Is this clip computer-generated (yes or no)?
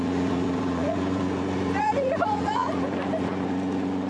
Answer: yes